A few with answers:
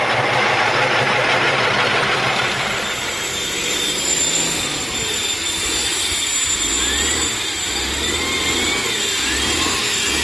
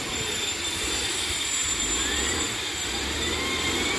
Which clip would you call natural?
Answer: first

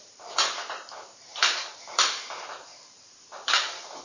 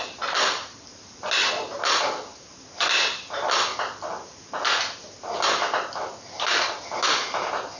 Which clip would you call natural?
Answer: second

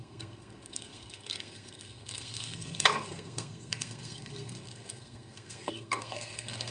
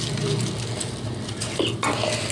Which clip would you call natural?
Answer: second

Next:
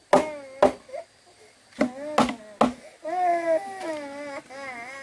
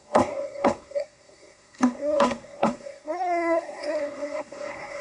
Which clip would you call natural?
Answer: first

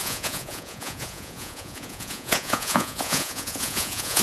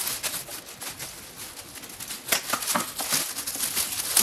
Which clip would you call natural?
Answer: second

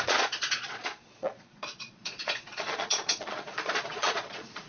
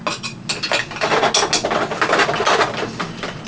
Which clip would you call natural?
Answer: second